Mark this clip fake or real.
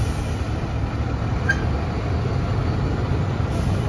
real